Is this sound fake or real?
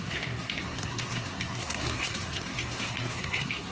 fake